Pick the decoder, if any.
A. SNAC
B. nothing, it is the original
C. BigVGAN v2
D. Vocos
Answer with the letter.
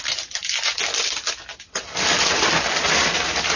B